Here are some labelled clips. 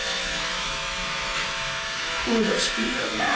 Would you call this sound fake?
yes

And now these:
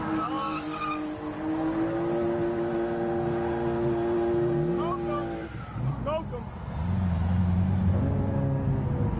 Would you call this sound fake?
no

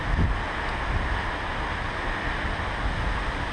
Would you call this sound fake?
no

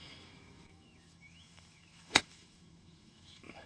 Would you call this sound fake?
yes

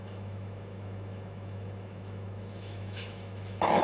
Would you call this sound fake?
yes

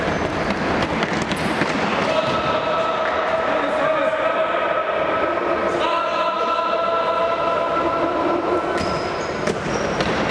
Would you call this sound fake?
no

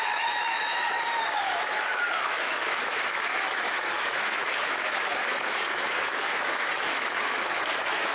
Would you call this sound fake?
yes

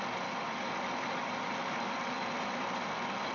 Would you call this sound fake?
no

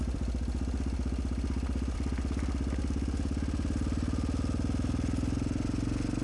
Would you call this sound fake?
no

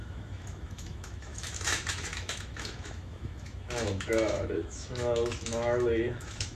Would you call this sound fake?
yes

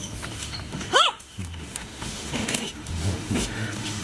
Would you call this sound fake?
yes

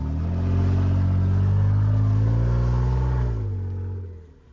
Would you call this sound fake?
no